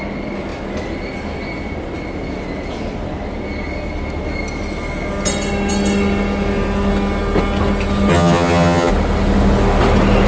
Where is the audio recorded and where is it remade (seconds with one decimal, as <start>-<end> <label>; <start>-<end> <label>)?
0.0-8.1 recorded; 8.1-8.9 remade; 8.9-10.3 recorded